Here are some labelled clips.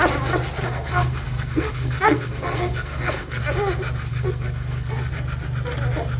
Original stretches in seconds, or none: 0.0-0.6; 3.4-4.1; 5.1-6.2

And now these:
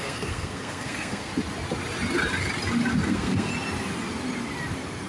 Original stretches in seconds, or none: 1.3-3.1; 3.5-5.1

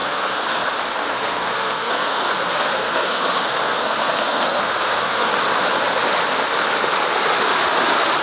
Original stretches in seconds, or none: 0.6-1.0; 5.3-8.2

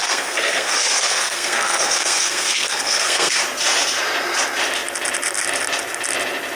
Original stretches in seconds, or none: 3.4-6.6

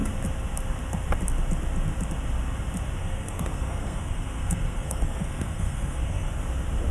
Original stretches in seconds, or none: 0.0-3.0; 6.3-6.9

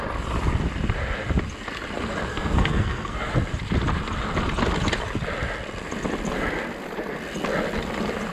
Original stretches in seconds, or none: 0.0-2.3; 3.3-8.3

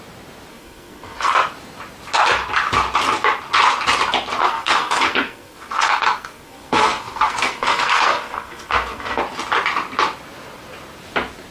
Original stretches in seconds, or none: 0.0-0.5; 1.3-4.4; 9.2-11.5